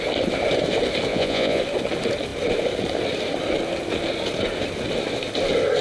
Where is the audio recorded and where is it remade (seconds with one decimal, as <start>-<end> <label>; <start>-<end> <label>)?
0.0-1.1 recorded; 1.1-1.6 remade; 1.6-5.8 recorded